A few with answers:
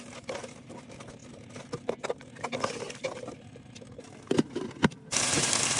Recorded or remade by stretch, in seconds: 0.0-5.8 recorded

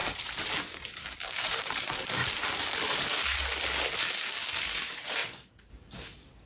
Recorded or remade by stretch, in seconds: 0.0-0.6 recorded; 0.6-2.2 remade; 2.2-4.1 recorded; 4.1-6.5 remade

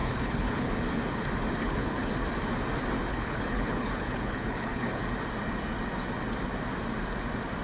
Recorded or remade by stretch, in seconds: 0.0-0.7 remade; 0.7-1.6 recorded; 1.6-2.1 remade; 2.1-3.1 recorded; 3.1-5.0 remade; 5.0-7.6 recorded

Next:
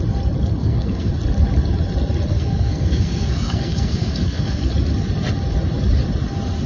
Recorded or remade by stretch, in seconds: 0.0-0.6 recorded; 0.6-1.1 remade; 1.1-2.3 recorded; 2.3-4.6 remade; 4.6-6.7 recorded